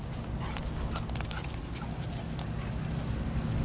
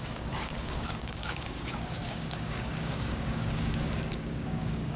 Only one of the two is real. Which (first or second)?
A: first